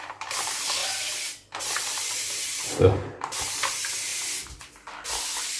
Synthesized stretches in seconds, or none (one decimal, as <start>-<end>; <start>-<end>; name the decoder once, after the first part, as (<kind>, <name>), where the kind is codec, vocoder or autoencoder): 0.0-0.8 (vocoder, BigVGAN v2); 1.6-4.1